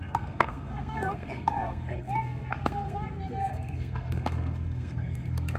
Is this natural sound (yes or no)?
no